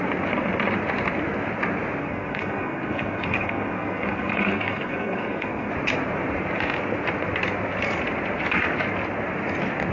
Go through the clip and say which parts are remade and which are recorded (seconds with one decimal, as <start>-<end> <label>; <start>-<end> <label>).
0.0-2.0 recorded; 2.0-5.7 remade; 5.7-9.9 recorded